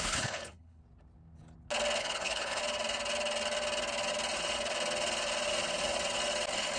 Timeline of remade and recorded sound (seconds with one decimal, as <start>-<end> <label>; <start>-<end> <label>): 0.0-0.8 remade; 0.8-2.0 recorded; 2.0-2.6 remade; 2.6-6.8 recorded